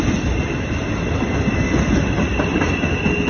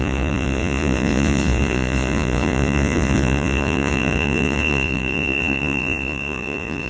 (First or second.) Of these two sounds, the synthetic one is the second